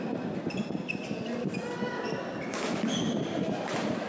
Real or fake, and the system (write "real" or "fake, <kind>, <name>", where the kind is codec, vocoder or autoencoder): real